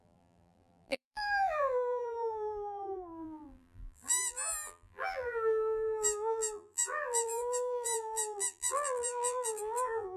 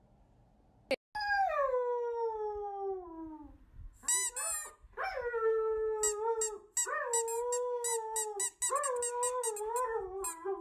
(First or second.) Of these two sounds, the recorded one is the second